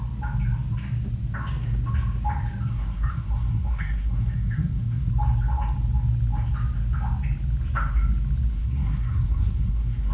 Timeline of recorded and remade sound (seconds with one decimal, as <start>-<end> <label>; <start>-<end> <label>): 0.0-2.7 recorded; 2.7-5.1 remade; 5.1-8.5 recorded; 8.5-10.1 remade